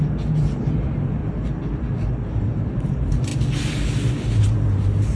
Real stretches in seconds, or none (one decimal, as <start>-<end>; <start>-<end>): 1.2-2.3; 3.3-4.3